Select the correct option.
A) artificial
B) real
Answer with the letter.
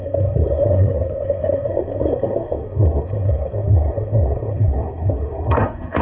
A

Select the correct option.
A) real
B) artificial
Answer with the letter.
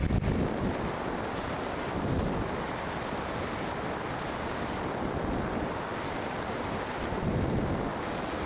B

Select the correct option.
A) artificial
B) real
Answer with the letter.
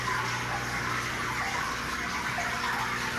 B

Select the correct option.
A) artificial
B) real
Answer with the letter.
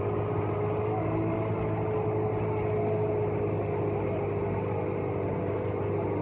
B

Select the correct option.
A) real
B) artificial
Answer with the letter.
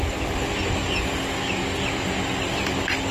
A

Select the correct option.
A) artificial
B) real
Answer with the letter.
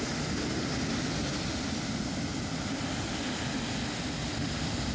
B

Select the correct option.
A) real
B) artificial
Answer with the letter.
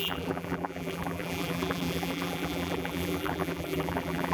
B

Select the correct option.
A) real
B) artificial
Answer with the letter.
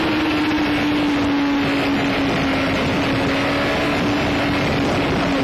A